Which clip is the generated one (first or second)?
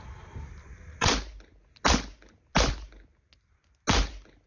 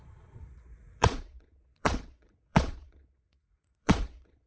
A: second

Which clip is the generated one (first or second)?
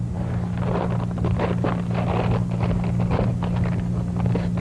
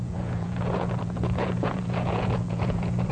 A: second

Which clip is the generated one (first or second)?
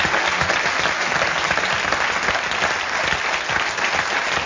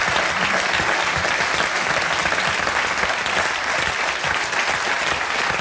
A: second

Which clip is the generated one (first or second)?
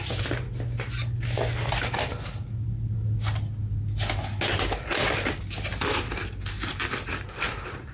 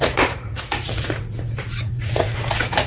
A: second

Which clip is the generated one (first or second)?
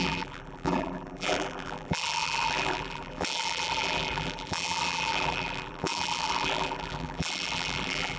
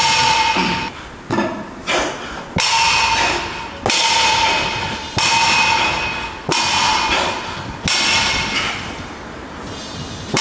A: first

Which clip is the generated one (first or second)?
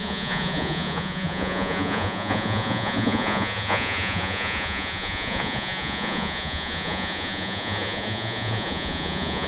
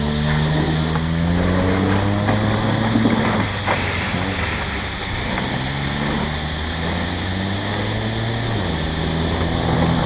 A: first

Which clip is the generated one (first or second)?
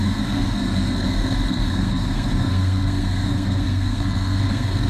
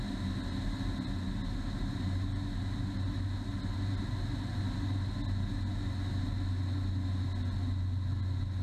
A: first